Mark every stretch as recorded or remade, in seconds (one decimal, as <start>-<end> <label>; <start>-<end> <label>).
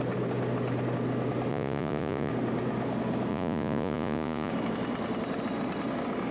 0.0-1.5 recorded; 1.5-2.3 remade; 2.3-3.3 recorded; 3.3-4.5 remade; 4.5-6.3 recorded